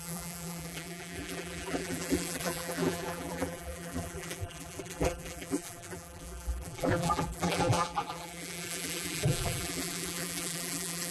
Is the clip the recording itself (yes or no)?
no